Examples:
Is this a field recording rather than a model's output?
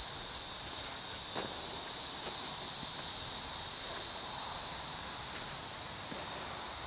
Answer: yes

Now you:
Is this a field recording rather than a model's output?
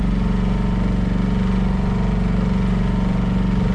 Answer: yes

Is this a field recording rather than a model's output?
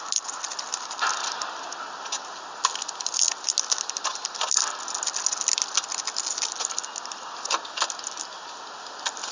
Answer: yes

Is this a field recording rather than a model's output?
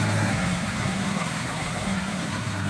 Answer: no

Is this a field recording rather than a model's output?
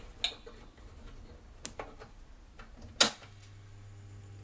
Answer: yes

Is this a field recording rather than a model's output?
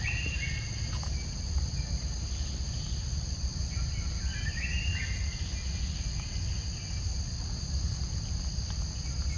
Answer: yes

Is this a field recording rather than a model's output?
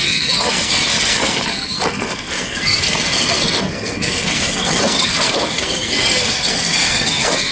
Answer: no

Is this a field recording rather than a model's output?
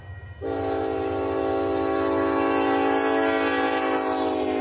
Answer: yes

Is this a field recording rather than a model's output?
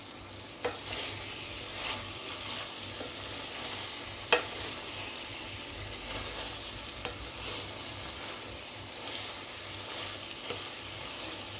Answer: yes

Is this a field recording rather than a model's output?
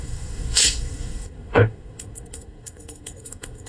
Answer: no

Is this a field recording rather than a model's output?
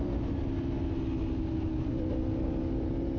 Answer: yes